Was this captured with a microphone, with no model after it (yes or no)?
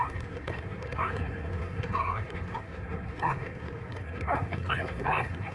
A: no